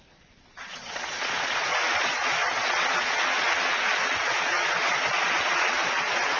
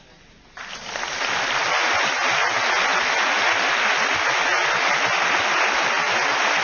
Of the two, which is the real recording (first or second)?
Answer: second